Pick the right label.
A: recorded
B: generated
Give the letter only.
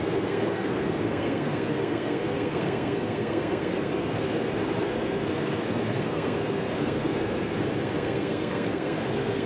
B